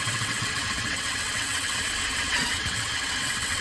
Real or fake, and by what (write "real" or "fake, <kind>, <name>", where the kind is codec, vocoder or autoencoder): fake, vocoder, WaveNeXt